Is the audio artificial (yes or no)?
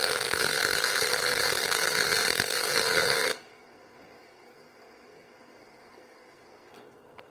yes